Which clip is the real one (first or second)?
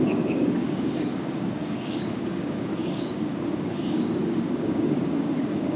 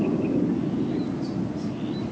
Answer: second